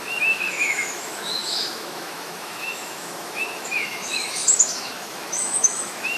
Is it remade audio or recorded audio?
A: remade